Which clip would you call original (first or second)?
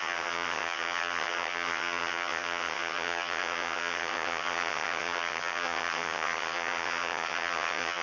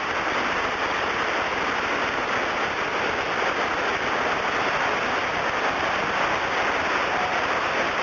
second